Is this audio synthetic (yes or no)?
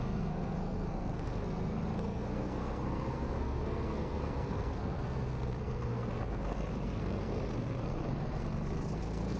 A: yes